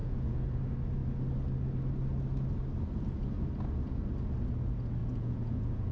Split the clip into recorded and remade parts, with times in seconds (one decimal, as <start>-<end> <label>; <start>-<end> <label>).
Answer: 0.0-0.6 remade; 0.6-5.0 recorded; 5.0-5.9 remade